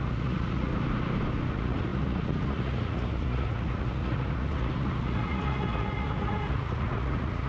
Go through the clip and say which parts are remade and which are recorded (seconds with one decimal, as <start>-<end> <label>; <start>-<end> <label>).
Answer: 0.0-0.7 remade; 0.7-1.5 recorded; 1.5-7.5 remade

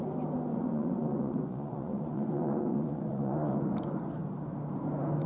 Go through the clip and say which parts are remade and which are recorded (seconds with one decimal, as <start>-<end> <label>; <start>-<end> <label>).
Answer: 0.0-0.5 recorded; 0.5-3.7 remade; 3.7-5.3 recorded

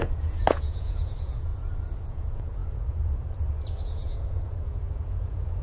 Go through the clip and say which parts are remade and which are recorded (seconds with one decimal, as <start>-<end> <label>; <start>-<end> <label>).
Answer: 0.0-1.5 remade; 1.5-2.1 recorded; 2.1-5.6 remade

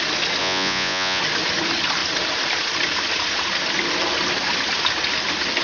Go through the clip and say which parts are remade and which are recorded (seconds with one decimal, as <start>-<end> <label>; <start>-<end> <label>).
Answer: 0.0-0.4 recorded; 0.4-1.2 remade; 1.2-5.6 recorded